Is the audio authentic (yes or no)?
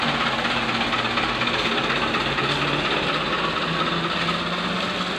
yes